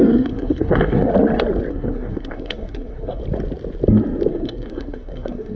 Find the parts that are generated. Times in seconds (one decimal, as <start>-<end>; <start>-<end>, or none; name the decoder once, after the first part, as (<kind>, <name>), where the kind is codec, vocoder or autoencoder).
0.0-1.1 (codec, SNAC); 1.7-3.2; 4.3-5.5